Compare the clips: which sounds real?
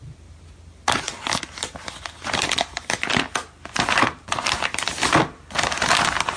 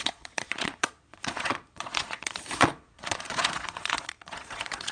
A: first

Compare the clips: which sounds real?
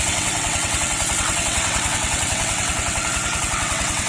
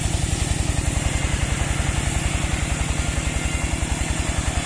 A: second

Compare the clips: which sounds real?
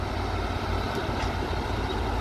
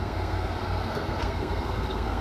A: first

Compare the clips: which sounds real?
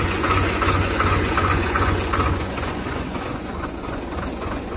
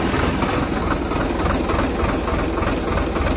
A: second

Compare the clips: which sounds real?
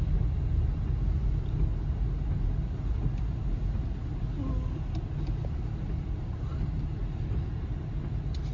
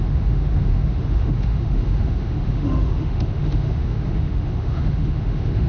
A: first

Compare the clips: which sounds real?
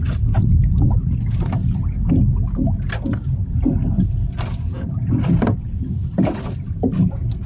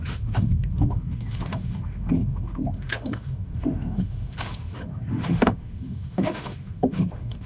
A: first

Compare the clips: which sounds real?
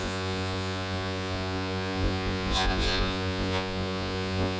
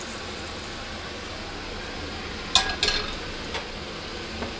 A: second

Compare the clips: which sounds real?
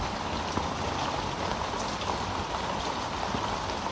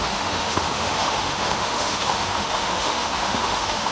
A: first